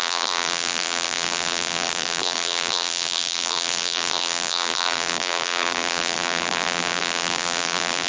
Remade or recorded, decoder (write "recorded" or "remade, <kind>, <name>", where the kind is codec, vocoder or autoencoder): remade, vocoder, BigVGAN v2